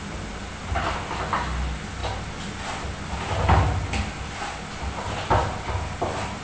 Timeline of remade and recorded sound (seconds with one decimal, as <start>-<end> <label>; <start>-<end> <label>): 0.0-6.4 recorded